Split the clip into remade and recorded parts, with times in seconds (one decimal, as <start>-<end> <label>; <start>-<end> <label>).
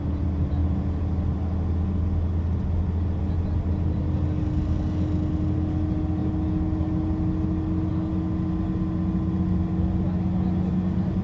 0.0-11.2 recorded